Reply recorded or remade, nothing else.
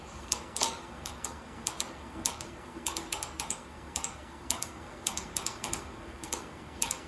remade